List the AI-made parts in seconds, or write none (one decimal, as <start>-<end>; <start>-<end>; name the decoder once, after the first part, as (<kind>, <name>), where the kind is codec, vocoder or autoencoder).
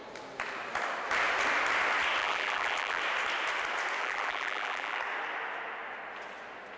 2.2-3.0 (vocoder, BigVGAN v2); 4.0-5.0